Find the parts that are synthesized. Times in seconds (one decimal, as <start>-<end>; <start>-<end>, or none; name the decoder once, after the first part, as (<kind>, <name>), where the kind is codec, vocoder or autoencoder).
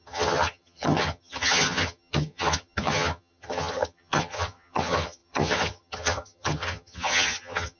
0.0-7.8 (vocoder, HiFi-GAN)